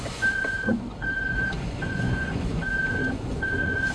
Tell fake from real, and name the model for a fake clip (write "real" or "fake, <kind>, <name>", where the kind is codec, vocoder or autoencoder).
fake, vocoder, Vocos